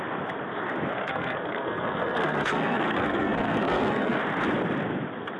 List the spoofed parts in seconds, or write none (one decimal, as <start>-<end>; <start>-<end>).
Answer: 1.0-4.2